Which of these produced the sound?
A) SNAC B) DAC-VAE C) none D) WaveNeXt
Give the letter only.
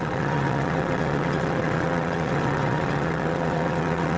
D